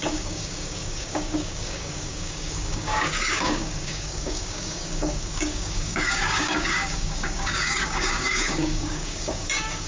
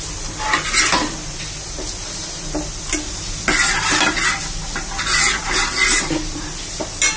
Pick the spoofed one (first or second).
first